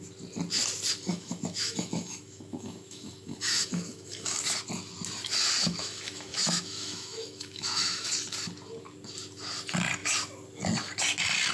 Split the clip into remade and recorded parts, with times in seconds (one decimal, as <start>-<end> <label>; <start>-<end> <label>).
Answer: 0.0-1.1 recorded; 1.1-4.4 remade; 4.4-5.6 recorded; 5.6-8.1 remade; 8.1-11.5 recorded